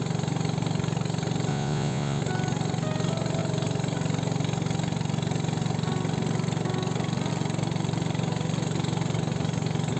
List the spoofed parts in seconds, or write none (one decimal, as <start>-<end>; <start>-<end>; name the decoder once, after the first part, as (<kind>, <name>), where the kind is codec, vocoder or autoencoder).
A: 1.5-2.2 (vocoder, Vocos)